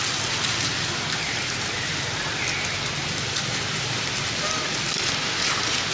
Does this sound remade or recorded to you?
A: recorded